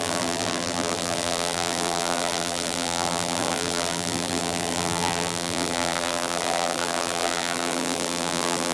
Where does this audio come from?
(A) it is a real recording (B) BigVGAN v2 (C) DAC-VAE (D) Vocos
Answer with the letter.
B